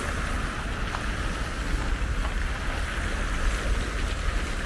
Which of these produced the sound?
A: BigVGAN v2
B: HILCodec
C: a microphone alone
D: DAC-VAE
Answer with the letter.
C